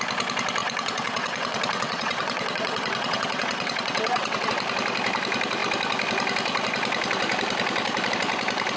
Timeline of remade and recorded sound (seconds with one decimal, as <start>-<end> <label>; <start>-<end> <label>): 0.0-0.6 recorded; 0.6-4.5 remade; 4.5-8.8 recorded